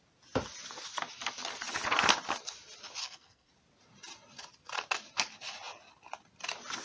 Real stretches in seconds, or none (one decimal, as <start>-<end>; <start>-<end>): 0.0-3.0; 3.5-6.8